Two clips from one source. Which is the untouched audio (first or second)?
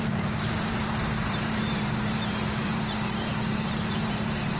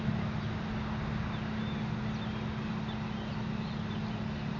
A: second